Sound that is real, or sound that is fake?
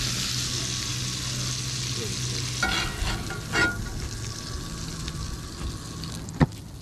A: real